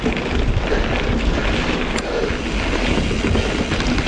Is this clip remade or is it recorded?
recorded